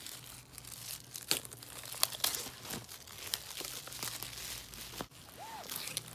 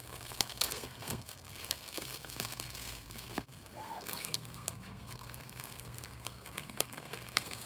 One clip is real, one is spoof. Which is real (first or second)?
first